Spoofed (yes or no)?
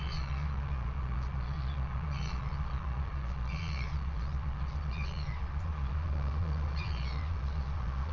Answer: yes